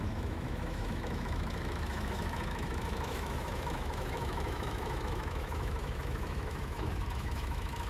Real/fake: fake